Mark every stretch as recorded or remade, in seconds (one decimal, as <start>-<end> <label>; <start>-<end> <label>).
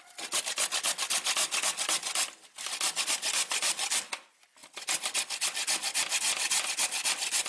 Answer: 0.0-7.5 recorded